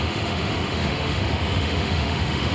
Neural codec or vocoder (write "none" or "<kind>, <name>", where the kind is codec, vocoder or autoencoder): autoencoder, DAC-VAE